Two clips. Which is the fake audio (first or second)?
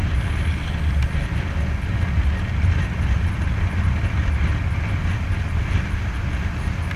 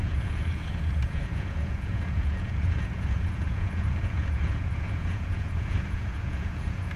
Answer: second